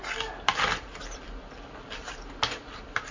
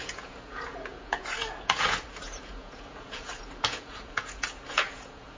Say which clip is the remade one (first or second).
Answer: second